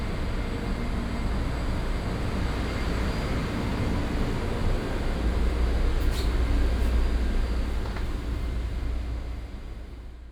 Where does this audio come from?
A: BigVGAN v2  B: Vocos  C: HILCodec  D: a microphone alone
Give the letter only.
D